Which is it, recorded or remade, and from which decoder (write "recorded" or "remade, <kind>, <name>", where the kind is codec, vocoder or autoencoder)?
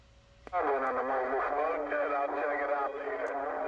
recorded